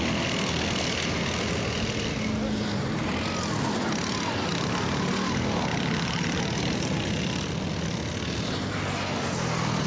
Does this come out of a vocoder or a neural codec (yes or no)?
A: no